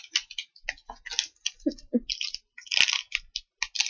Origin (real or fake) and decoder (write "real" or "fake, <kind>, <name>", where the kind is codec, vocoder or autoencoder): real